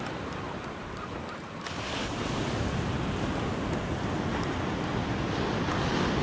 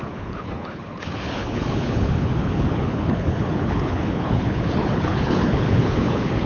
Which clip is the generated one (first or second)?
second